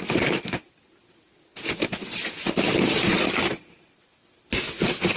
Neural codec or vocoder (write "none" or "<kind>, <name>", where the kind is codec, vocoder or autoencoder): none